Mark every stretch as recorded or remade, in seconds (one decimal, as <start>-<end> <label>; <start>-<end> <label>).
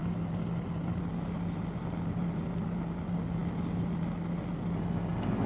0.0-5.5 recorded